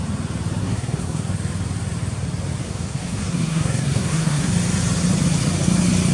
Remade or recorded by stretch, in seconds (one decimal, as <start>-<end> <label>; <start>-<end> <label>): 0.0-0.6 recorded; 0.6-1.3 remade; 1.3-2.6 recorded; 2.6-4.5 remade; 4.5-6.1 recorded